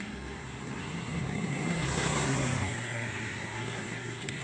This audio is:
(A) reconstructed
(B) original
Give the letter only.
A